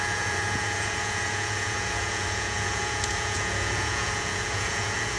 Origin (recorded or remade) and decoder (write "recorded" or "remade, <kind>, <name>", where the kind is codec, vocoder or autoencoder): remade, vocoder, Vocos